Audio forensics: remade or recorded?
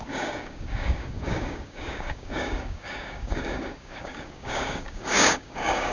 remade